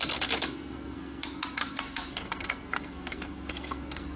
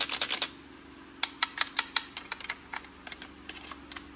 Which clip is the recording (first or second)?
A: second